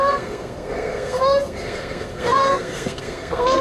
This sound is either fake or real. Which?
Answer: fake